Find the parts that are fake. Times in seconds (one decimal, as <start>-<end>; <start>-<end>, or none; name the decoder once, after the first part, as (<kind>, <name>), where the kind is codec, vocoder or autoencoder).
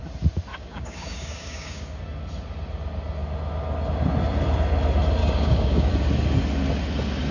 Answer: 0.5-2.0 (codec, DAC); 5.2-5.9